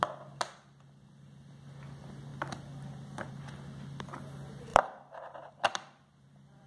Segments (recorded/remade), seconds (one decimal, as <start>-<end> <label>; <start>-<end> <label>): 0.0-4.7 recorded; 4.7-6.7 remade